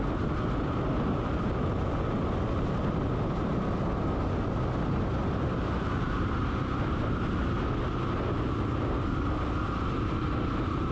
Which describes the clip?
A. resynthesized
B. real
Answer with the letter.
B